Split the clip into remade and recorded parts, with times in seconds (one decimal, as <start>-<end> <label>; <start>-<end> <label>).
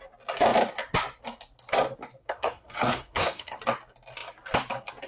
0.0-2.2 recorded; 2.2-3.6 remade; 3.6-5.1 recorded